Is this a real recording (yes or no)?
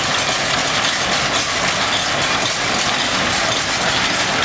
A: yes